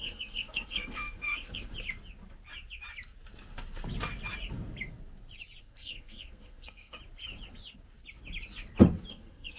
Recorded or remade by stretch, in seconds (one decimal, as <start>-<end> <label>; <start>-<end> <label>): 0.0-1.7 remade; 1.7-5.6 recorded; 5.6-7.0 remade; 7.0-9.1 recorded; 9.1-9.6 remade